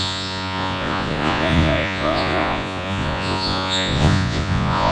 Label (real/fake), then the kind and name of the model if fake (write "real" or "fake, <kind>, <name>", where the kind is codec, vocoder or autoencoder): fake, vocoder, Vocos